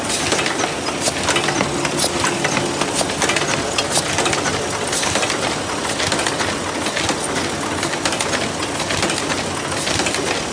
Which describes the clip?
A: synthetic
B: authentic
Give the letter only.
B